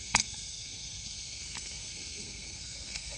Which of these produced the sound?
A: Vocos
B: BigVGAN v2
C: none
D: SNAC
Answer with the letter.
D